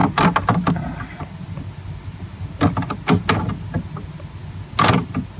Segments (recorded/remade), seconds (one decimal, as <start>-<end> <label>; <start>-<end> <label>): 0.0-5.4 recorded